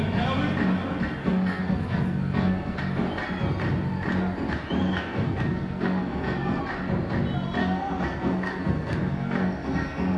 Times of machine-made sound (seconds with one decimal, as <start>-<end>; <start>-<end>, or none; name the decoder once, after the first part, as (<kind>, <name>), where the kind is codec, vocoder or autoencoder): 1.2-2.8 (codec, SNAC); 4.8-6.6; 7.6-10.2